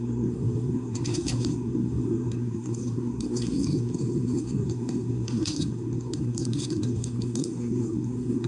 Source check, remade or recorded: remade